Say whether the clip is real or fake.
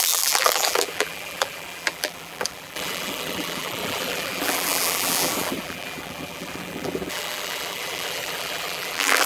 fake